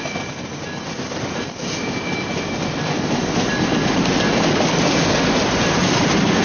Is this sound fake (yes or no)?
no